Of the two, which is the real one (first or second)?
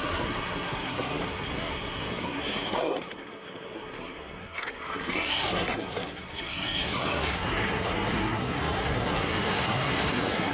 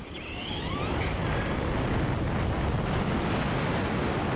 second